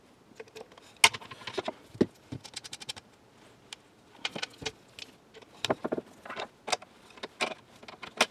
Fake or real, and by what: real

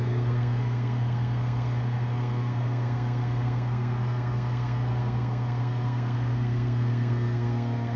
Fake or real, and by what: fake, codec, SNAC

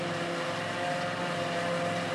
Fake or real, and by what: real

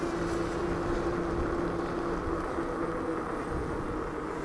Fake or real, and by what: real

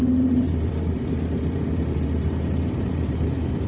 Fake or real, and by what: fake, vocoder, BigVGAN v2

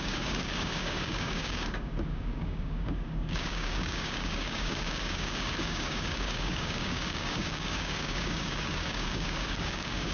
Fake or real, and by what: fake, codec, DAC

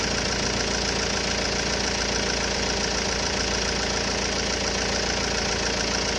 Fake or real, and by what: real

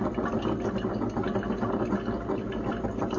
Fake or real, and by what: real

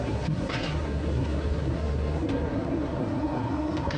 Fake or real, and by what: fake, codec, SNAC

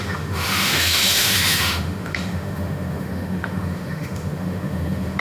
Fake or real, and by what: fake, autoencoder, DAC-VAE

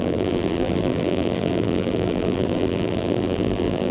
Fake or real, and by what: fake, vocoder, BigVGAN v2